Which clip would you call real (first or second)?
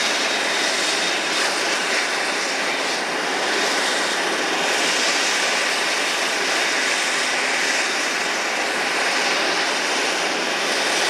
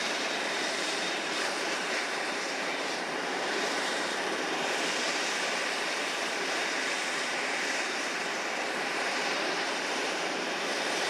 first